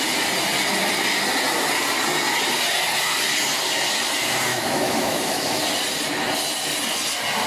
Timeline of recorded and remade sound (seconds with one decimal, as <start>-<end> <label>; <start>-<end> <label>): 0.0-4.5 recorded; 4.5-5.6 remade; 5.6-7.5 recorded